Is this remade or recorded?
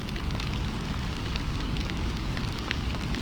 remade